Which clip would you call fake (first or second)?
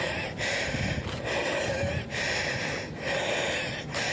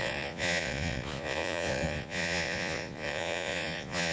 second